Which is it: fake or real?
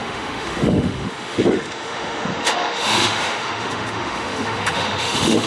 fake